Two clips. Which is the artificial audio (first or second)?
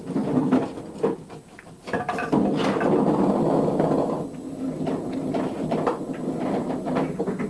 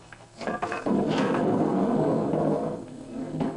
second